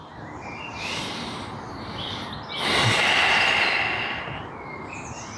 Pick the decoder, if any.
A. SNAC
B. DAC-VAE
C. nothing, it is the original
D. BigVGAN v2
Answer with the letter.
C